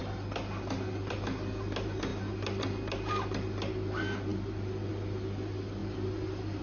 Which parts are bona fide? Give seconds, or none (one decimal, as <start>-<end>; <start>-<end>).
0.0-6.6